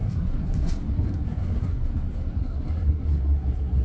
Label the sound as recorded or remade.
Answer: remade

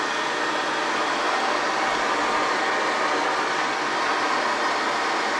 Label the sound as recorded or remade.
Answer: recorded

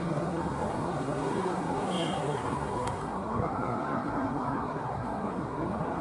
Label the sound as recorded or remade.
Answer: remade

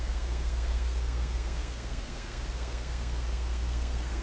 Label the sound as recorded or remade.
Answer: remade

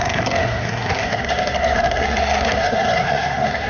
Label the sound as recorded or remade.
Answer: remade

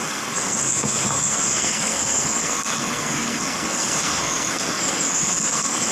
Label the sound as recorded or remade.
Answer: remade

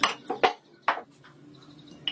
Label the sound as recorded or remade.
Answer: recorded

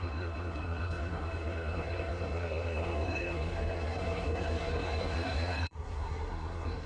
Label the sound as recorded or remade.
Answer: remade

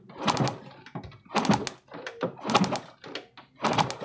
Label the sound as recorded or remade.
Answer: recorded